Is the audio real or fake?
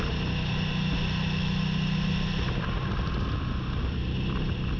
real